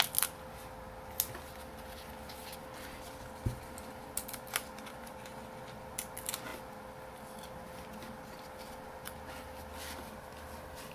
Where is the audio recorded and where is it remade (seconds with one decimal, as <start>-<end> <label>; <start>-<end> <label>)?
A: 0.0-10.9 recorded